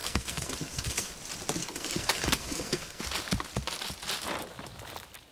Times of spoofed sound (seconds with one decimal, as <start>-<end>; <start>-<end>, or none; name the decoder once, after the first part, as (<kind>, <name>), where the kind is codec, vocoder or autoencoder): 0.0-1.1 (codec, SNAC); 1.6-3.0